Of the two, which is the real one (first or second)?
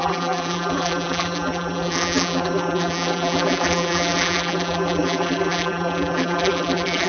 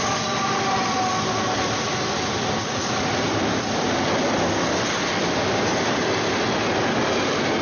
second